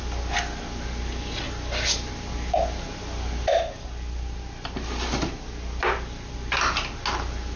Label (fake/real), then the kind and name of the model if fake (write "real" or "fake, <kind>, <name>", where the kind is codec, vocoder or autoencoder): real